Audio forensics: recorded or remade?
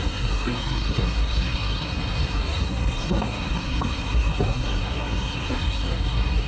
remade